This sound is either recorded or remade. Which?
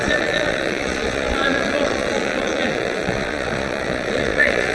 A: remade